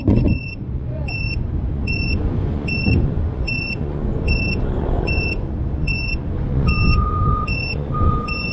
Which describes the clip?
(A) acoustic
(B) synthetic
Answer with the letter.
B